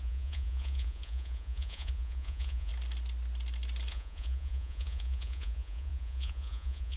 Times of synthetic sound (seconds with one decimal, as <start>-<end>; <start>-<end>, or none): 0.0-2.7; 3.9-7.0